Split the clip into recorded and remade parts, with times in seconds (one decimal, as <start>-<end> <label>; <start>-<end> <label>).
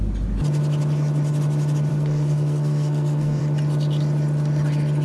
0.0-1.9 recorded; 1.9-3.4 remade; 3.4-5.0 recorded